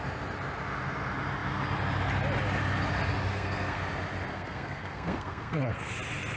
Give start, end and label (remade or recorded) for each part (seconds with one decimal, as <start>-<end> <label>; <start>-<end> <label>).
0.0-3.3 recorded; 3.3-3.8 remade; 3.8-4.3 recorded; 4.3-5.9 remade; 5.9-6.4 recorded